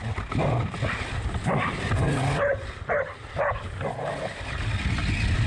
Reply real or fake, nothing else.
real